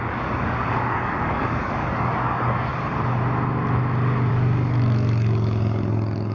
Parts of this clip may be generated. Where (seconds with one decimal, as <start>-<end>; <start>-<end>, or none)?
0.0-2.7; 4.3-6.3